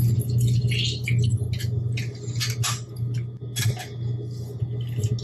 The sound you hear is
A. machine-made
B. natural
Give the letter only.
B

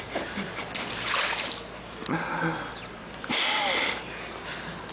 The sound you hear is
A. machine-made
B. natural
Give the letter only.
B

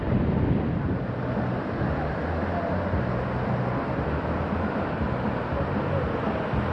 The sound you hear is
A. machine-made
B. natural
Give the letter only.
B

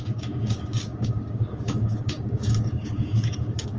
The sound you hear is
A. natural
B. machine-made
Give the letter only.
B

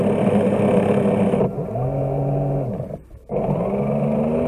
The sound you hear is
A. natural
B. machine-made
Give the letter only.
A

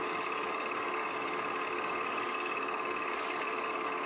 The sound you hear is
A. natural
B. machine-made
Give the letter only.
B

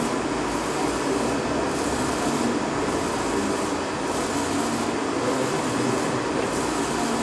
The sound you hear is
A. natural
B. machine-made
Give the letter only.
A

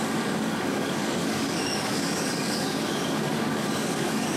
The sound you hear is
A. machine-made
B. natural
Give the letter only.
A